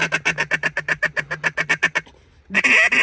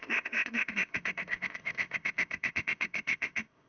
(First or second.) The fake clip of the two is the second